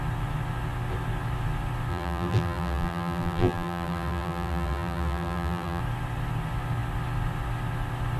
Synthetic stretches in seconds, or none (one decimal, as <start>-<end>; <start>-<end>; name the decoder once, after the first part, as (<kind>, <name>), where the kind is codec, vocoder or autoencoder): 1.9-5.8 (vocoder, BigVGAN v2)